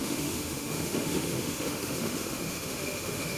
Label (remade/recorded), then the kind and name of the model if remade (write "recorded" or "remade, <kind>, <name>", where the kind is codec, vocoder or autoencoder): remade, autoencoder, DAC-VAE